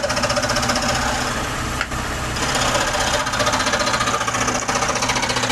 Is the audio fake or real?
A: real